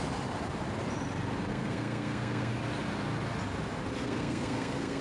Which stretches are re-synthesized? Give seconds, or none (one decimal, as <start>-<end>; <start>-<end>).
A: 1.5-2.5; 4.0-5.0

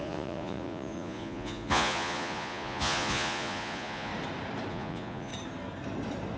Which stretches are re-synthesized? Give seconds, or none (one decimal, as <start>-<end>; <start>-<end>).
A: 0.0-4.1; 4.7-5.3

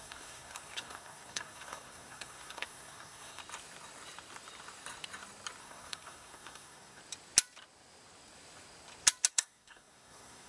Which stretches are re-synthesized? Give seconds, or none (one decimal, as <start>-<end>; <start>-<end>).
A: 0.0-3.4; 5.6-7.0; 9.3-10.5

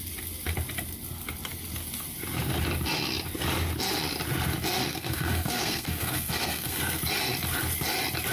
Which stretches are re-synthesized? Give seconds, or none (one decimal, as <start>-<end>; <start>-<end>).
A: 4.9-7.0

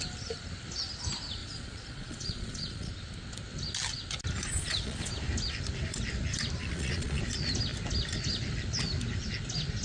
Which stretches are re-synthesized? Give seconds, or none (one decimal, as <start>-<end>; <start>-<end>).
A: 1.4-2.9; 4.5-5.1; 6.6-7.2

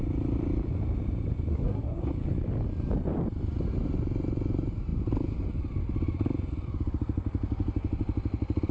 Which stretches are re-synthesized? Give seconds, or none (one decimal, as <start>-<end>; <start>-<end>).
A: 1.5-2.1

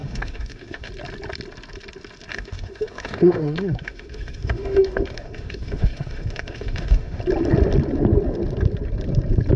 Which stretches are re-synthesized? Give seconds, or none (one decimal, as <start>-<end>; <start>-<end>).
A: 0.0-0.9; 2.3-7.2

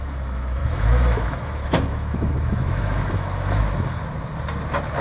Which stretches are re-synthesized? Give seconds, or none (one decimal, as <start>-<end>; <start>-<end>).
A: 0.0-4.0